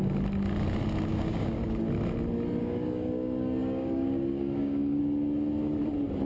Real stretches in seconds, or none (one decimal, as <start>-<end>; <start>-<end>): 0.0-1.1; 1.8-2.6; 5.0-6.2